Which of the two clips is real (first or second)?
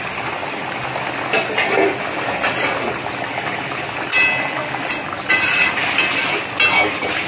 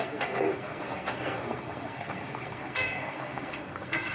first